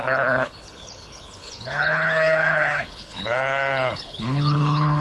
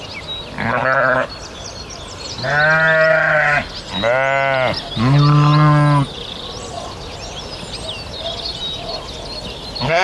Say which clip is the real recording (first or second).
second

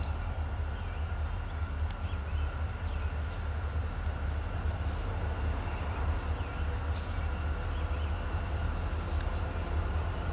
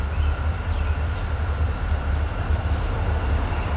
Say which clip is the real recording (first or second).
first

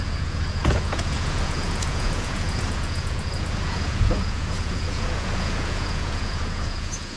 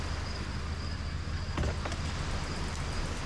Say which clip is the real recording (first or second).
second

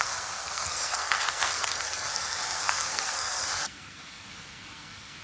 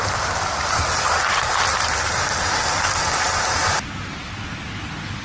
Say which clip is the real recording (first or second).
second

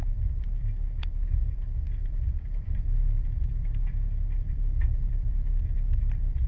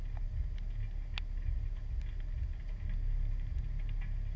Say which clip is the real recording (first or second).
second